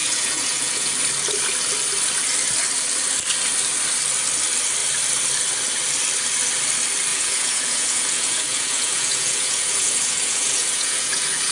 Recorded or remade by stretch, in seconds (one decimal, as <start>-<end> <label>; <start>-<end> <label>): 0.0-0.9 remade; 0.9-7.1 recorded; 7.1-11.5 remade